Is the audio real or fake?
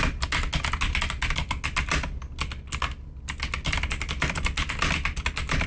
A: real